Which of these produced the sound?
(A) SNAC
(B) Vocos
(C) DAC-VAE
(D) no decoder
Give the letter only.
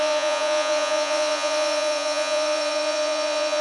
B